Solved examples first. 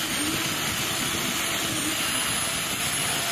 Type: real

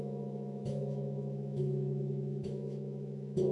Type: fake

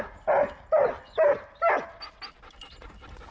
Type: real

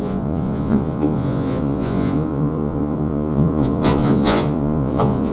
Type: fake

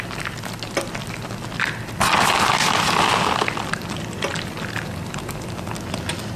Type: real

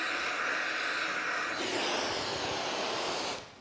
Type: real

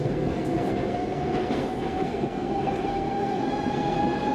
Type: fake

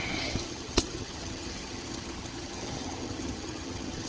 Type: fake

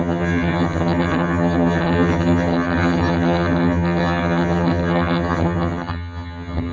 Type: fake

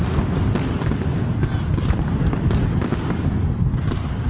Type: real